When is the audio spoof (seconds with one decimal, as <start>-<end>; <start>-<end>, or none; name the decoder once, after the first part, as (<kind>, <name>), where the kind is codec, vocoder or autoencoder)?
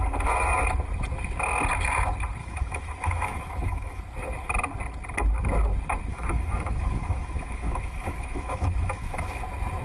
2.4-4.0 (autoencoder, DAC-VAE); 6.1-9.4